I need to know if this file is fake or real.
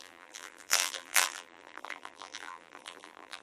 fake